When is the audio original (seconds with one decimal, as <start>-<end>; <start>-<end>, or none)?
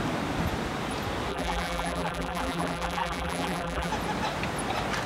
0.0-1.3; 3.9-5.1